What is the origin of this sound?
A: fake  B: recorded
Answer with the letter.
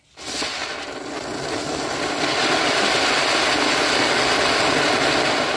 B